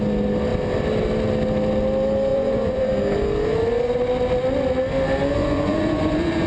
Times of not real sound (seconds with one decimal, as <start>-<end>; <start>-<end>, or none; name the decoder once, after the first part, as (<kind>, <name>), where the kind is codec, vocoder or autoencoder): 2.3-2.9 (vocoder, Vocos); 5.4-6.5